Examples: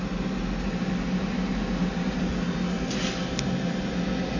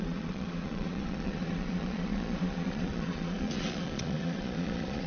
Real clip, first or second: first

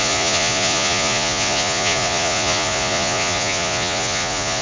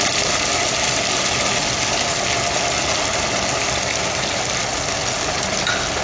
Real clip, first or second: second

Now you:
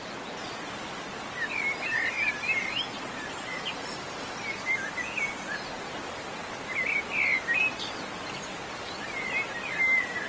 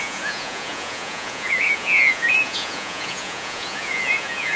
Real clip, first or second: first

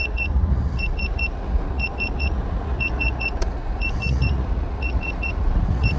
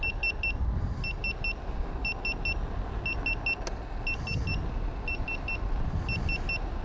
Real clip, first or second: second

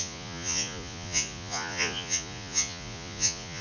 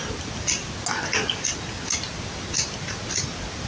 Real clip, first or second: second